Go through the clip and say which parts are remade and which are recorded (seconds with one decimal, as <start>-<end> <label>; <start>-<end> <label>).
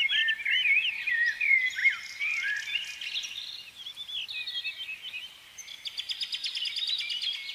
0.0-7.5 recorded